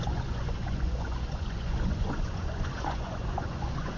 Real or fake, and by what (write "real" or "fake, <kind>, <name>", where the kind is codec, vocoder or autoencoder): fake, vocoder, Vocos